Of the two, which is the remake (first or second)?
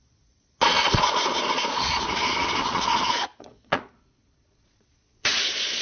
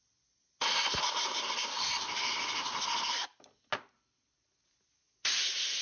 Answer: first